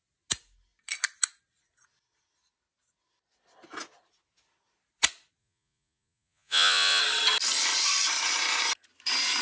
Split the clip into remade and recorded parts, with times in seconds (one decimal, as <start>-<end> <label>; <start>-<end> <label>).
0.0-5.4 recorded; 5.4-7.0 remade; 7.0-9.4 recorded

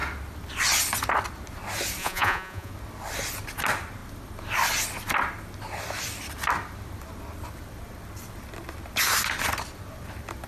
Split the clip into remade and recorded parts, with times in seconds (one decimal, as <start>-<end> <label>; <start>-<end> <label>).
0.0-2.0 recorded; 2.0-2.7 remade; 2.7-10.5 recorded